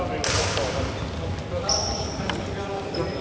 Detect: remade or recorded recorded